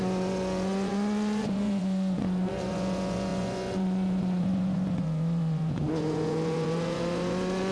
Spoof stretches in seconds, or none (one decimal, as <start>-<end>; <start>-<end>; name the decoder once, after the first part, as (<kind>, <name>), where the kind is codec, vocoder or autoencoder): 0.0-7.7 (vocoder, Vocos)